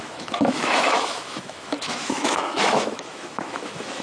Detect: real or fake fake